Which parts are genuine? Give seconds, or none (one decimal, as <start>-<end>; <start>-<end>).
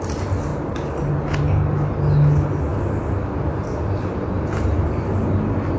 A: 0.0-5.8